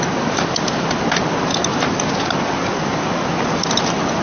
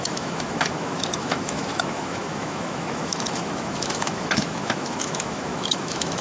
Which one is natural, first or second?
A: first